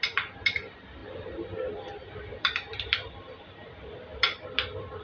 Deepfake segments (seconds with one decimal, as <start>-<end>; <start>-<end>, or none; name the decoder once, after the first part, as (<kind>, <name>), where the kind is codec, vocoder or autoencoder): 2.3-3.4 (vocoder, BigVGAN v2)